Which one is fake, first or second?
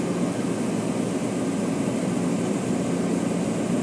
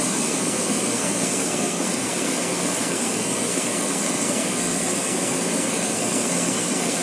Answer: second